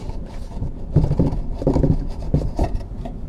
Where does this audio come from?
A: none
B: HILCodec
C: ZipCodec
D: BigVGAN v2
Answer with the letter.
D